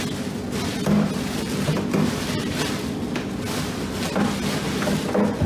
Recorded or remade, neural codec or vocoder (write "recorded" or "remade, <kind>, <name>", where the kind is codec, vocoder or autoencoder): recorded